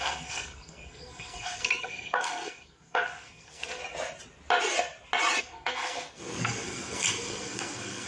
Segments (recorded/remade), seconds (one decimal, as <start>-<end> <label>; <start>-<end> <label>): 0.0-3.8 remade; 3.8-5.4 recorded; 5.4-8.1 remade